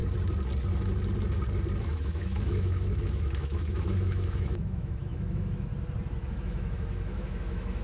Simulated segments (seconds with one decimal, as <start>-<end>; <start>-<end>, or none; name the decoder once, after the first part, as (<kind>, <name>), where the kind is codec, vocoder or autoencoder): 1.8-5.7 (autoencoder, DAC-VAE); 6.3-7.8